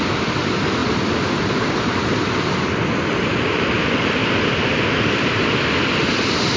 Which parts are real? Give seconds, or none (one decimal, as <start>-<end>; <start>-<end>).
none